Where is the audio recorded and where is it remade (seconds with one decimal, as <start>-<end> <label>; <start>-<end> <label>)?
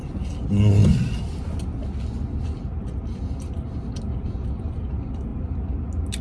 0.0-6.2 recorded